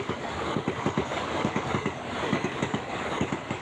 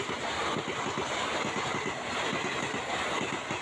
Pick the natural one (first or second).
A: second